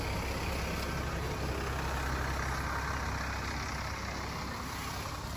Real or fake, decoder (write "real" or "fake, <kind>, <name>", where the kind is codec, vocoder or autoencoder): real